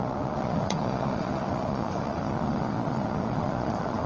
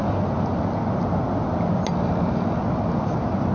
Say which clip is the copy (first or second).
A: first